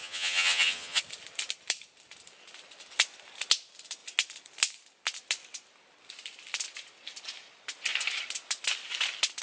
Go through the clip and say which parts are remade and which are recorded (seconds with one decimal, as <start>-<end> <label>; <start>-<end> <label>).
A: 0.0-1.0 remade; 1.0-9.4 recorded